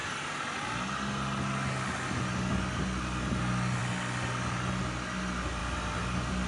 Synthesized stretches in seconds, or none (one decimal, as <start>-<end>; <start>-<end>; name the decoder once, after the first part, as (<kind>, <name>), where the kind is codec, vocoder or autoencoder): none